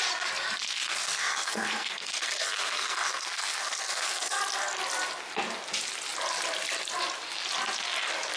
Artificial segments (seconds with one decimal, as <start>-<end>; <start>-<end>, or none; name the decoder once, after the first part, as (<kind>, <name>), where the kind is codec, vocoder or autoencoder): 0.6-4.4 (codec, SNAC)

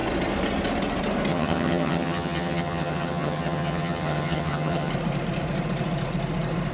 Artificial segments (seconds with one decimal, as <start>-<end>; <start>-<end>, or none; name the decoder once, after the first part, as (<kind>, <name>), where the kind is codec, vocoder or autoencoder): 1.3-4.9 (vocoder, HiFi-GAN)

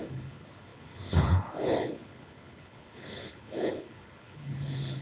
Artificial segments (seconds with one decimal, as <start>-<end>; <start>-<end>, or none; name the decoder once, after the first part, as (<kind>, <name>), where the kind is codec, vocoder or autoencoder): 0.0-5.0 (codec, HILCodec)

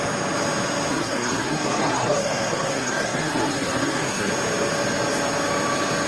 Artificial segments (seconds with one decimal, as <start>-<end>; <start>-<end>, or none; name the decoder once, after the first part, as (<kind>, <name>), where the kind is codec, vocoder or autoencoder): 0.9-4.3 (codec, SNAC)

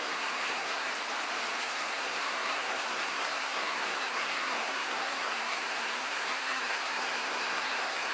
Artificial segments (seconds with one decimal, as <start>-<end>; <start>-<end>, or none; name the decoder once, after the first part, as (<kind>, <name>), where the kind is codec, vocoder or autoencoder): 0.0-0.9 (codec, SNAC); 1.6-8.1

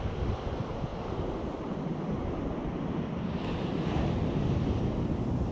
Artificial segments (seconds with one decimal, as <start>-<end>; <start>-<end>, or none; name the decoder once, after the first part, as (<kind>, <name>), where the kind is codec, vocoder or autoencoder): none